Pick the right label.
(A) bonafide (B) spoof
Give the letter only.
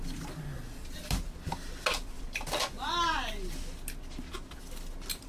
A